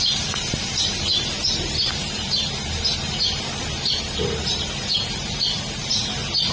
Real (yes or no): no